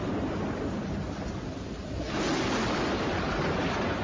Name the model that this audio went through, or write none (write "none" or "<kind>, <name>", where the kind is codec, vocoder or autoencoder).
none